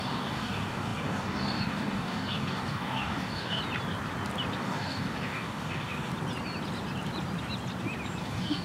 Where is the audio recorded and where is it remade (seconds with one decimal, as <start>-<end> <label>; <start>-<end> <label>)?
0.0-3.6 remade; 3.6-4.6 recorded; 4.6-6.1 remade; 6.1-8.2 recorded; 8.2-8.6 remade